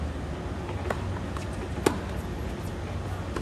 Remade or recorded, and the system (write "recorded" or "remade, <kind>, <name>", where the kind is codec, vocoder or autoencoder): recorded